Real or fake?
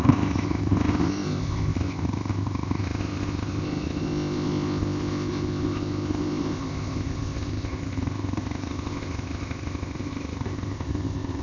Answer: fake